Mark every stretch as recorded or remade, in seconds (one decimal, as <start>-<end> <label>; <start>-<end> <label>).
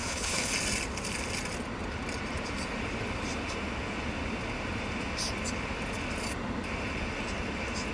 0.0-0.5 remade; 0.5-7.9 recorded